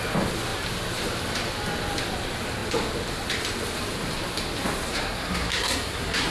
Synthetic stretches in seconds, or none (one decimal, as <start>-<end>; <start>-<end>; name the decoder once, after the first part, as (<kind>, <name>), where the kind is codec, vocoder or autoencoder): 4.9-6.3 (codec, SNAC)